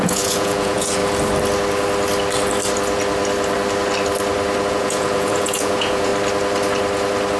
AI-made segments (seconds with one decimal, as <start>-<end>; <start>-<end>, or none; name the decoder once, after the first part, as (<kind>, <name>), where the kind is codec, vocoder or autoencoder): 0.0-1.0 (vocoder, Vocos); 4.7-6.1